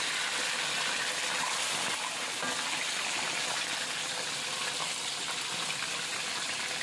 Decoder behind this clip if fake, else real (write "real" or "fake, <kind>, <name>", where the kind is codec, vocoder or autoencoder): real